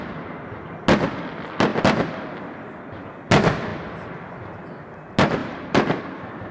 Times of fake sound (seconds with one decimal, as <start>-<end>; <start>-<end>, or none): 1.7-2.8; 3.7-4.3; 5.4-6.0